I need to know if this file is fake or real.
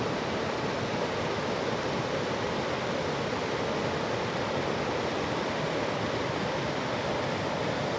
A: real